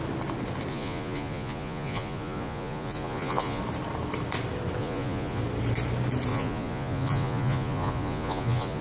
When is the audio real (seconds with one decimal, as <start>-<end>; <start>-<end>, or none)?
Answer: 0.0-0.7; 3.6-4.8; 5.4-6.3